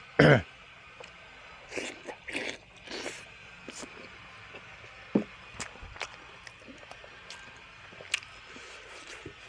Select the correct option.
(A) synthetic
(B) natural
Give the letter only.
B